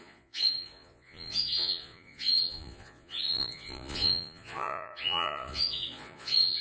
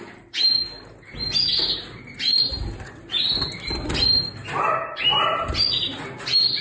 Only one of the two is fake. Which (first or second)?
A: first